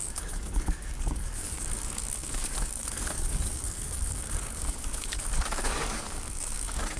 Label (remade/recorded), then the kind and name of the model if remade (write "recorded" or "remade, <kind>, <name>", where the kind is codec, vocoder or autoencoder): remade, codec, DAC